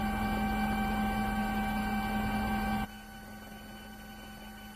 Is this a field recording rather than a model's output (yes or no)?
yes